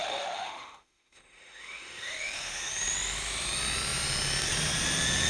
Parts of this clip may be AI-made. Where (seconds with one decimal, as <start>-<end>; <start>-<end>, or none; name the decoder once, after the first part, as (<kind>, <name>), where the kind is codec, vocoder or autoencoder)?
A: 0.0-2.7 (autoencoder, DAC-VAE)